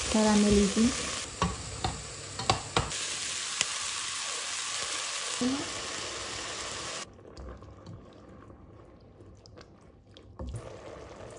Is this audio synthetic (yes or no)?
no